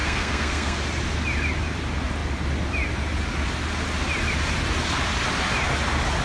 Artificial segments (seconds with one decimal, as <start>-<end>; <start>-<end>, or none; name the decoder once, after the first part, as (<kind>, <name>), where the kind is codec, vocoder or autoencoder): 0.0-0.8 (codec, SNAC)